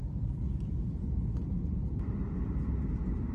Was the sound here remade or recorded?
recorded